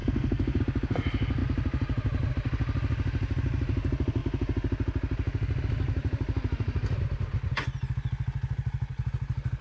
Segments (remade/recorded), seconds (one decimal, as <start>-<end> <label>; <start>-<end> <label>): 0.0-0.6 remade; 0.6-9.6 recorded